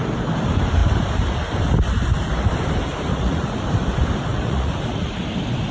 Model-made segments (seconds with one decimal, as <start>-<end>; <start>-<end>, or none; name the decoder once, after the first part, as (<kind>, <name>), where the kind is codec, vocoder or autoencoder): 3.1-3.7 (vocoder, Vocos); 4.3-5.1